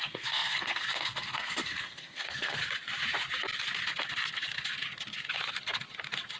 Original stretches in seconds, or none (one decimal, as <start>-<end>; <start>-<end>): 2.6-6.4